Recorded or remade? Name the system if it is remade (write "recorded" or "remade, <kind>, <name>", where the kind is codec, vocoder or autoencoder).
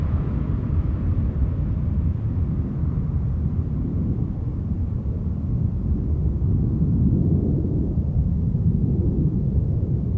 recorded